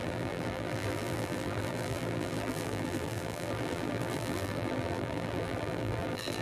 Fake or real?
fake